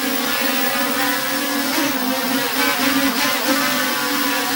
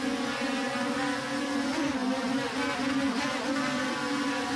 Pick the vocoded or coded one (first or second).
second